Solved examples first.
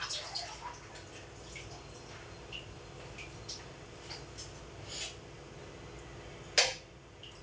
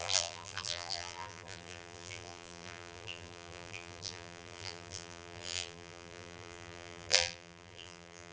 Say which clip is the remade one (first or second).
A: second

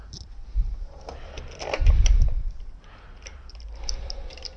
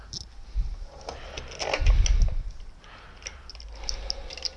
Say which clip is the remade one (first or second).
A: first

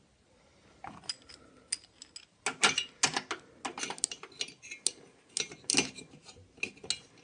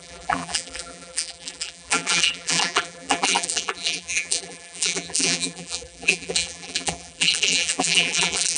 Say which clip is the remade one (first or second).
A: second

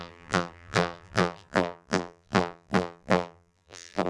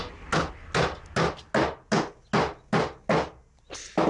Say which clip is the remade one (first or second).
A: first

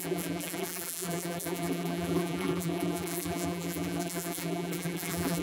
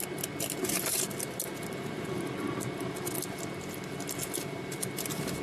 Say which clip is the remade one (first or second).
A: first